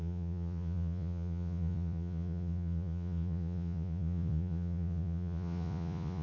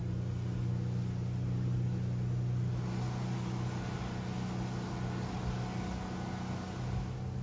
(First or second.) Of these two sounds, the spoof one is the first